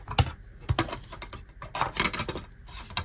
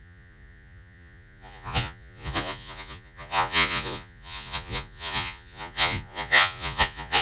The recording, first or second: first